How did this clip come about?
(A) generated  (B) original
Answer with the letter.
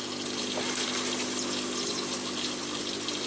B